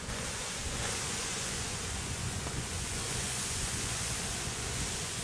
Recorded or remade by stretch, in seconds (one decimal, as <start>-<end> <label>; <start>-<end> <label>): 0.0-5.2 remade